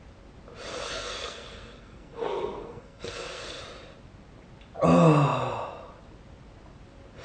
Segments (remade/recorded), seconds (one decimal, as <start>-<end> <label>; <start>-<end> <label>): 0.0-0.7 recorded; 0.7-3.6 remade; 3.6-7.2 recorded